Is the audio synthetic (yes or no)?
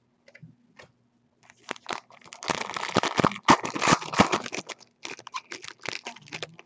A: no